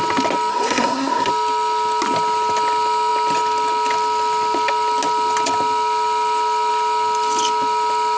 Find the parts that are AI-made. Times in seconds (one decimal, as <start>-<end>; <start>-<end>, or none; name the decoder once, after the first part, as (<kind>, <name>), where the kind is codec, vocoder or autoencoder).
0.5-1.3 (codec, SNAC)

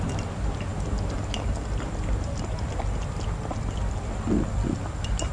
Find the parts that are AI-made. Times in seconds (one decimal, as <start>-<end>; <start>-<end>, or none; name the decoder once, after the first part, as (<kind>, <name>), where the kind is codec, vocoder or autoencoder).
none

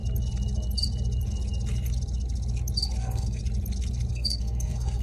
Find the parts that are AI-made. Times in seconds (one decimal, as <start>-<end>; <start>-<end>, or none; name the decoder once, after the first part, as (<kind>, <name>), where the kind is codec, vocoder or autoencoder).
3.0-3.4 (codec, SNAC); 4.1-5.0

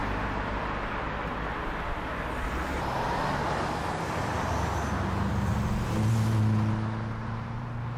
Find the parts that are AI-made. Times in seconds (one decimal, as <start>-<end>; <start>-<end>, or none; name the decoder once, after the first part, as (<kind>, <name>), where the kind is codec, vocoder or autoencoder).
7.2-8.0 (vocoder, BigVGAN v2)

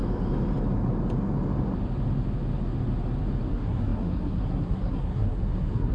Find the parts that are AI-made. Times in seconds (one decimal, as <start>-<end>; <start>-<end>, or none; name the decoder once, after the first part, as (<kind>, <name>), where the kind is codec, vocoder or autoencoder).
3.5-5.9 (codec, SNAC)

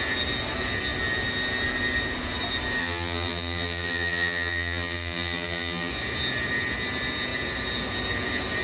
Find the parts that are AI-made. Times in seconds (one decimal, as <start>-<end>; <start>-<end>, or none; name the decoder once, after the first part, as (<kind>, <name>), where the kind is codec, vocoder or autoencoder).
2.8-5.9 (vocoder, BigVGAN v2)

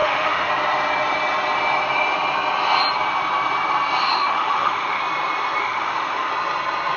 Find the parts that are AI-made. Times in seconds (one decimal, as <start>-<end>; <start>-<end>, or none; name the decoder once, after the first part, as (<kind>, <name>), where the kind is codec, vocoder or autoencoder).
0.0-0.5 (autoencoder, DAC-VAE); 4.0-5.0; 5.6-6.3

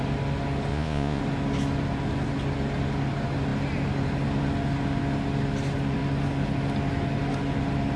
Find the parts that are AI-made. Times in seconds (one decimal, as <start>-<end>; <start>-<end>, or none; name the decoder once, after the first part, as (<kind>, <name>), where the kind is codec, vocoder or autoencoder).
0.7-1.2 (vocoder, Vocos)